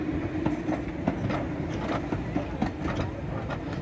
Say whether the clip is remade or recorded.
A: recorded